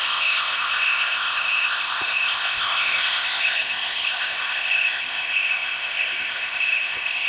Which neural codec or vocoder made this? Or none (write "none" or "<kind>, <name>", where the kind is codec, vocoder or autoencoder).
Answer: codec, ZipCodec